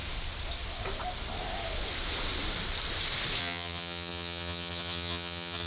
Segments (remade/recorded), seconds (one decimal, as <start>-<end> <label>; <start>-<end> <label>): 0.0-3.4 recorded; 3.4-5.7 remade